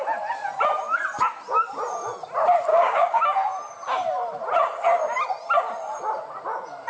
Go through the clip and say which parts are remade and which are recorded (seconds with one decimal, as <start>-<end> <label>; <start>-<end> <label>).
0.0-2.7 recorded; 2.7-3.2 remade; 3.2-6.9 recorded